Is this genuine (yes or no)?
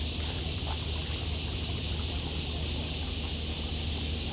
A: yes